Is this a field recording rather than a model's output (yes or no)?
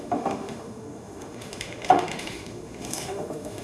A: no